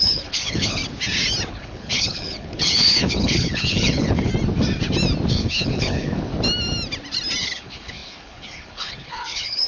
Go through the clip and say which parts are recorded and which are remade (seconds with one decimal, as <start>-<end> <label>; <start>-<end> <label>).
0.0-0.8 remade; 0.8-1.5 recorded; 1.5-4.3 remade; 4.3-5.3 recorded; 5.3-6.3 remade; 6.3-7.4 recorded; 7.4-9.7 remade